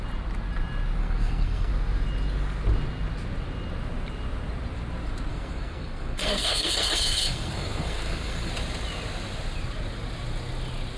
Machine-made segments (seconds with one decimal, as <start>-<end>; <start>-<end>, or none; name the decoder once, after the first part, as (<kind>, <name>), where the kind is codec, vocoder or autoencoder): 1.0-1.7 (codec, SNAC); 5.3-8.5